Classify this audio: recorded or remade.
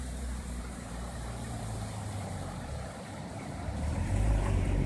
remade